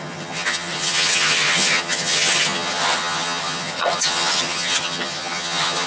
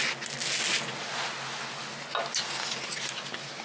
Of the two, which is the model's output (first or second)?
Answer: first